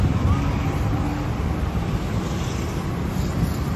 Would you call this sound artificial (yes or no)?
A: no